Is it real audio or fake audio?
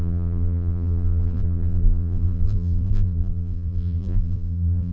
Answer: fake